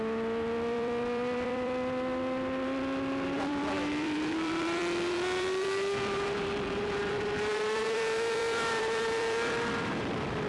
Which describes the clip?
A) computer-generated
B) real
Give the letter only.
A